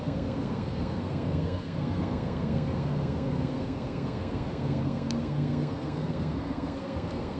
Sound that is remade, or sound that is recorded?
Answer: remade